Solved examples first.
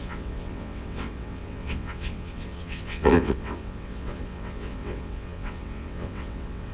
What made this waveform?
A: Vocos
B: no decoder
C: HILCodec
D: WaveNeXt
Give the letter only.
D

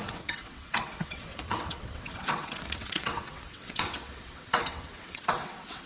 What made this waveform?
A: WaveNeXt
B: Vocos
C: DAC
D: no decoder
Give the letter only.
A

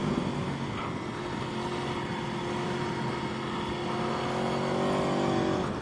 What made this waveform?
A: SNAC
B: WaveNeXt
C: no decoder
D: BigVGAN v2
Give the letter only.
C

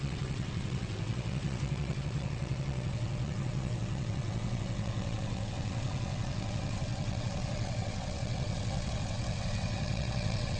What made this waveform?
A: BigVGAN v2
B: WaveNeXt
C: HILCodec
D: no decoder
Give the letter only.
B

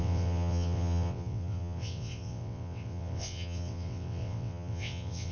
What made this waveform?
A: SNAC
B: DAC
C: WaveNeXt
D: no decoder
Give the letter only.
C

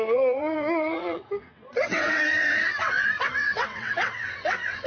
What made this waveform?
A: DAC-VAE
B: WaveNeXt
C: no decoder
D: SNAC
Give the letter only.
B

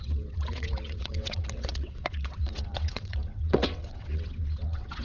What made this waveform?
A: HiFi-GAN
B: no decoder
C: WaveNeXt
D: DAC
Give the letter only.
C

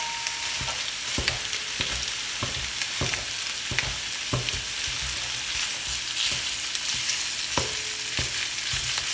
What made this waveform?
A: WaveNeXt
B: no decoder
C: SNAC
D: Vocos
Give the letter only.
B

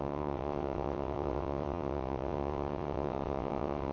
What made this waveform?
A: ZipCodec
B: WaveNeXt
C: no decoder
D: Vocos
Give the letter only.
B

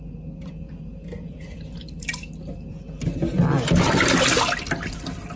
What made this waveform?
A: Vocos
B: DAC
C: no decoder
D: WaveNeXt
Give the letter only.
C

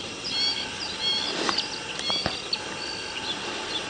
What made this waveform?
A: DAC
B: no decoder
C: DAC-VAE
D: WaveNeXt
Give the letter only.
B